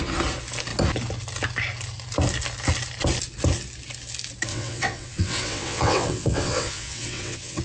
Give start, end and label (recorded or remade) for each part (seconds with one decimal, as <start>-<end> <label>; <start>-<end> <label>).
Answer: 0.0-4.5 recorded; 4.5-7.6 remade

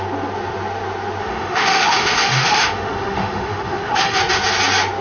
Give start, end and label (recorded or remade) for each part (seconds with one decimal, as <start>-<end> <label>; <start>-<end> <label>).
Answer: 0.0-1.2 recorded; 1.2-4.2 remade; 4.2-5.0 recorded

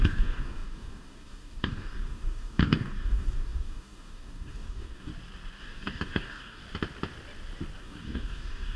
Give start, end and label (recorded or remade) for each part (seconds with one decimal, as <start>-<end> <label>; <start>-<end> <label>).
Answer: 0.0-5.1 remade; 5.1-5.6 recorded; 5.6-6.6 remade; 6.6-7.8 recorded; 7.8-8.8 remade

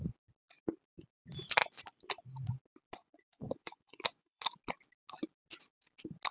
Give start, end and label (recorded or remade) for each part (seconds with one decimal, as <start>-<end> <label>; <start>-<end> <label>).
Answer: 0.0-3.0 recorded; 3.0-4.4 remade; 4.4-6.3 recorded

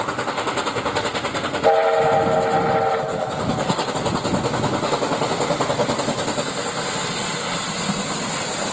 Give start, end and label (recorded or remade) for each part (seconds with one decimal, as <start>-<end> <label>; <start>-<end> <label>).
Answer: 0.0-3.1 recorded; 3.1-3.9 remade; 3.9-8.7 recorded

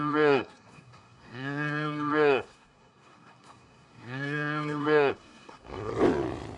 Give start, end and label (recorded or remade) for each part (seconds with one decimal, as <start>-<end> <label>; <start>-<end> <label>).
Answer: 0.0-5.9 remade; 5.9-6.6 recorded

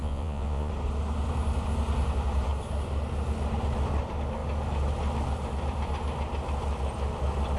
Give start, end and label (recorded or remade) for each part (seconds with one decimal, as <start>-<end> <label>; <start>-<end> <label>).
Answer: 0.0-0.7 remade; 0.7-7.6 recorded